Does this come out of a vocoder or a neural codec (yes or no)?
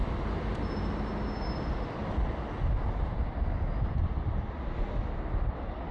no